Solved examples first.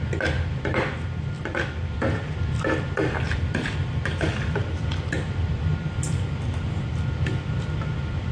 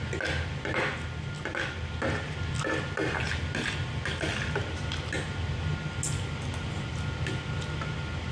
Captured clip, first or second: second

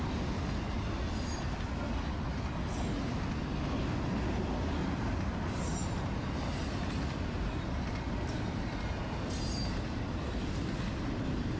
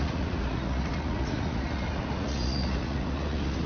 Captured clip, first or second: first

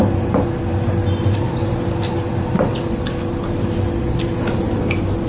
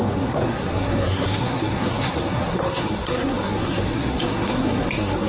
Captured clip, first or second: first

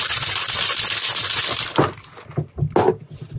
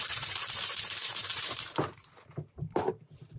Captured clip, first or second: first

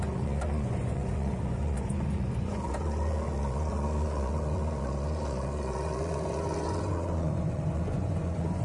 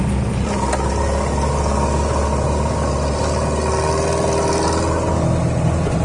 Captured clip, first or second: second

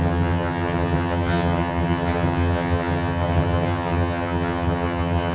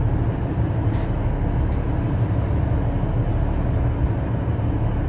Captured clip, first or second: second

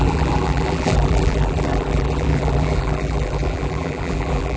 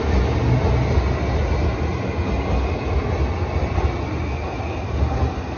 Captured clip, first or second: second